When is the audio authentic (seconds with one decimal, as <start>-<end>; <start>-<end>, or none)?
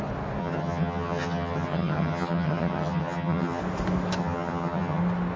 0.0-0.4; 3.6-4.2; 5.0-5.4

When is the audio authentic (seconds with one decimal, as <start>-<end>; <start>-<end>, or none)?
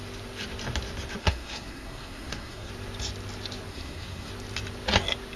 0.0-1.2; 2.7-3.7; 4.3-5.4